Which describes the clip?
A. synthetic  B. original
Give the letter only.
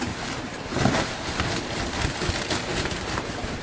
A